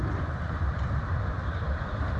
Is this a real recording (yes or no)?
no